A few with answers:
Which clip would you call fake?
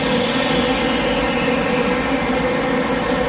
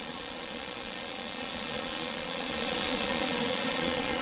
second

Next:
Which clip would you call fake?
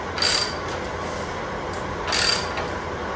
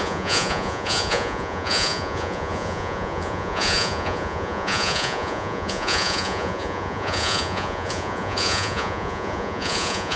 second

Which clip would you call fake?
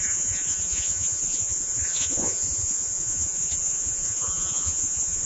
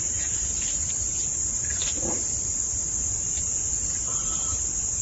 first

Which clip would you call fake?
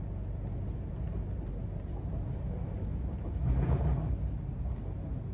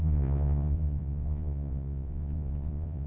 second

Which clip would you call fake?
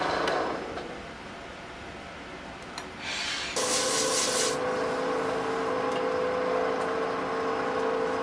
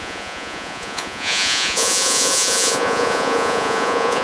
second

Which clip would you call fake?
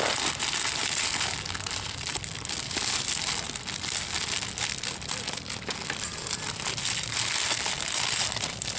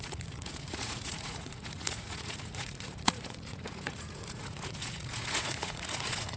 second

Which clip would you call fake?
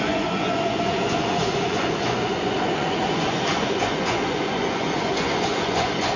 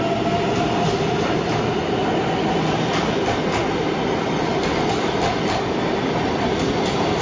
first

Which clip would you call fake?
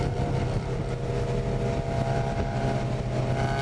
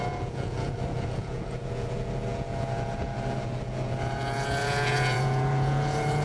second